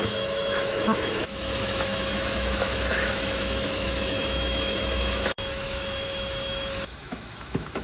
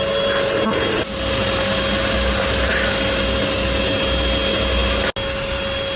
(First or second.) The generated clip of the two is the first